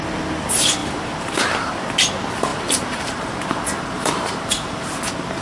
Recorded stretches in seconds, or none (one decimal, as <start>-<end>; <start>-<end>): 0.0-0.8; 1.7-2.5; 4.9-5.4